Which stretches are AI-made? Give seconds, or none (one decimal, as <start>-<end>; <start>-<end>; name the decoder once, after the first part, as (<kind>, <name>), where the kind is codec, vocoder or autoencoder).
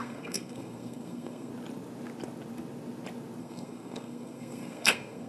0.0-1.5 (codec, SNAC); 3.4-5.3